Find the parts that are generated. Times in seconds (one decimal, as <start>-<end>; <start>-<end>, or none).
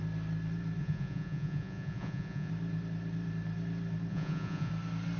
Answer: 0.8-2.5; 4.1-4.7